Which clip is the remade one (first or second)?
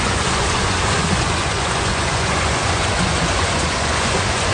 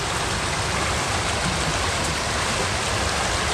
first